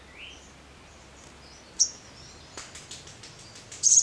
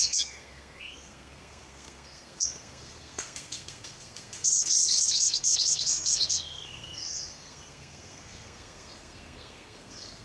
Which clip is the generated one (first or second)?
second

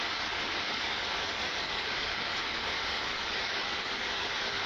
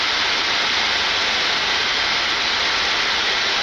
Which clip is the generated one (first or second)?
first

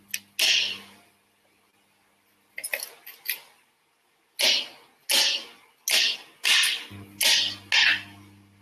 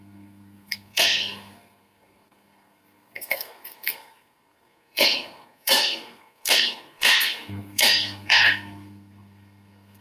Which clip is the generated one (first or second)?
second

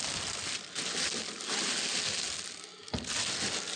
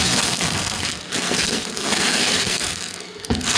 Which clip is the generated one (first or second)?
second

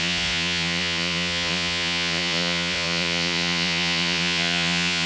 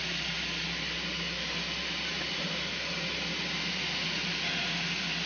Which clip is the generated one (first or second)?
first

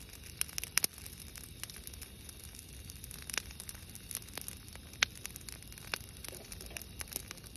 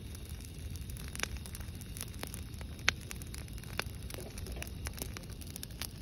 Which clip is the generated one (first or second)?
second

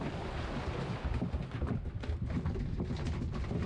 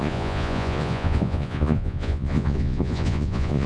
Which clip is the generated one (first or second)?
second